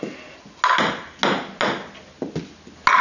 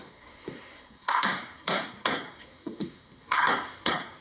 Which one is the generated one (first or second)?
second